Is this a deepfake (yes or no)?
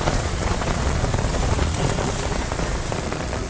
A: yes